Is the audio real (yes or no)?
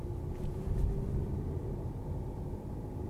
yes